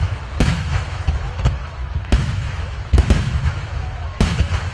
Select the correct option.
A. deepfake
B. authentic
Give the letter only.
A